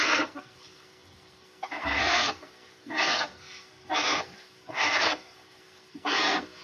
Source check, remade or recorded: remade